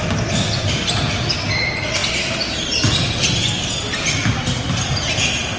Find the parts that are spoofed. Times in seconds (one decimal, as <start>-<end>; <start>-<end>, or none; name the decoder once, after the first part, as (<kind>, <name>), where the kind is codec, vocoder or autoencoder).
none